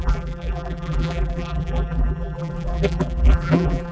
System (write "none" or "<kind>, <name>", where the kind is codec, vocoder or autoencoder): vocoder, BigVGAN v2